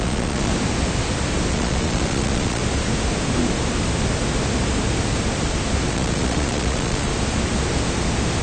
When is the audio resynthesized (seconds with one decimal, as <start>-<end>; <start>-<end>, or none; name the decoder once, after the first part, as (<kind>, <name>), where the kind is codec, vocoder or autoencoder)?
0.0-0.5 (vocoder, Vocos); 1.5-2.6; 5.9-7.1